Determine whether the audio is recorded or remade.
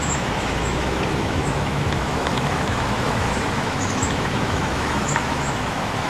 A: remade